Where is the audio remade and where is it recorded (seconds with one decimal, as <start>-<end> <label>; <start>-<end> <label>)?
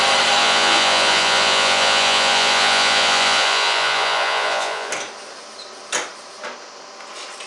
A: 0.0-0.4 recorded; 0.4-4.9 remade; 4.9-7.5 recorded